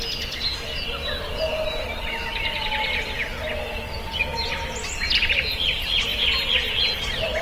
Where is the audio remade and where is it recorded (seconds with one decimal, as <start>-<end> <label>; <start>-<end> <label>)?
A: 0.0-7.4 recorded